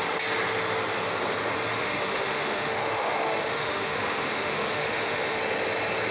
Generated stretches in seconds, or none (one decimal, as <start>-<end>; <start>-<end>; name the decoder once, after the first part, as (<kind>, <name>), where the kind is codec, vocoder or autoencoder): 1.7-5.4 (autoencoder, DAC-VAE)